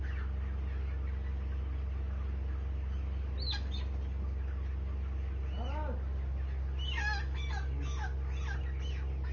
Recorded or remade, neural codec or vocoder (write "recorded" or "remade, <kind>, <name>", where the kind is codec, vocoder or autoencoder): recorded